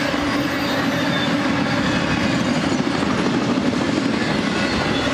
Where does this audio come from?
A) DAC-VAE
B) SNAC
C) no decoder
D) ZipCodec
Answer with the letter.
C